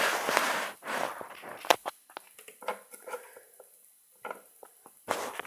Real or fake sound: real